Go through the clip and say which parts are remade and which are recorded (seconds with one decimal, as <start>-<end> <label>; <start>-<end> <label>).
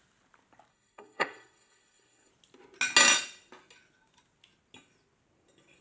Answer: 0.0-0.7 recorded; 0.7-2.3 remade; 2.3-5.8 recorded